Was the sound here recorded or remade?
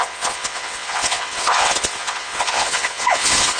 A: remade